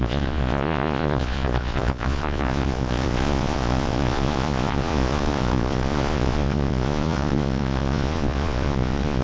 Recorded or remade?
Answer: remade